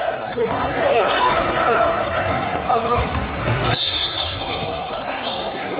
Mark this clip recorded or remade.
remade